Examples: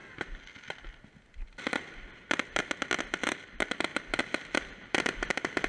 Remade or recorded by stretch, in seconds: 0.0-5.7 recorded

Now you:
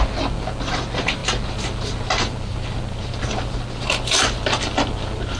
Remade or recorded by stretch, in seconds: 0.0-5.4 recorded

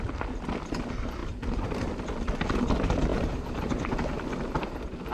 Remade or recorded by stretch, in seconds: 0.0-1.2 recorded; 1.2-1.9 remade; 1.9-3.1 recorded; 3.1-4.2 remade; 4.2-5.1 recorded

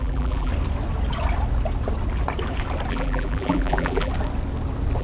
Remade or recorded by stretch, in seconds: 0.0-0.5 remade; 0.5-2.9 recorded; 2.9-4.1 remade; 4.1-5.0 recorded